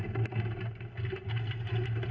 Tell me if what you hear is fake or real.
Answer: real